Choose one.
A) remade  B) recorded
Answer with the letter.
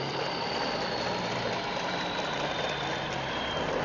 A